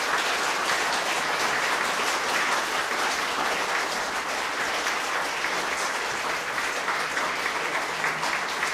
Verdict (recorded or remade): recorded